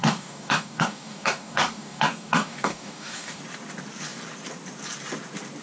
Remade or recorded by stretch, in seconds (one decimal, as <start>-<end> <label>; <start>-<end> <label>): 0.0-3.4 remade; 3.4-5.6 recorded